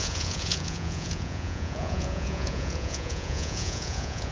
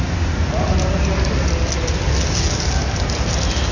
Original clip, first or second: second